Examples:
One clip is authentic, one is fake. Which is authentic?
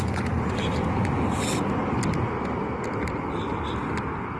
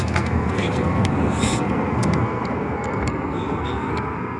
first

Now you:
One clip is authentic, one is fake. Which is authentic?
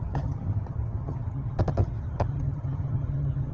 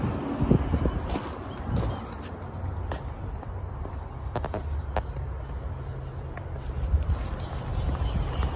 second